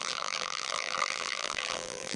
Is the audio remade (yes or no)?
yes